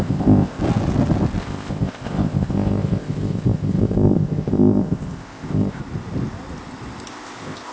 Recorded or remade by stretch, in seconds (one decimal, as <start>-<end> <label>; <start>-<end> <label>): 0.0-0.6 remade; 0.6-1.4 recorded; 1.4-5.8 remade; 5.8-7.1 recorded; 7.1-7.7 remade